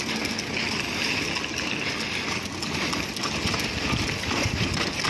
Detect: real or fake real